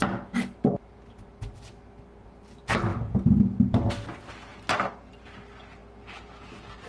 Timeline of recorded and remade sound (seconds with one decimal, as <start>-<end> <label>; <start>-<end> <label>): 0.0-2.9 recorded; 2.9-3.9 remade; 3.9-6.9 recorded

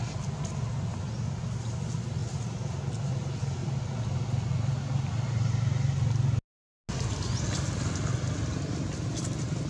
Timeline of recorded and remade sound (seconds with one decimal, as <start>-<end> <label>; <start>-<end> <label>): 0.0-9.7 recorded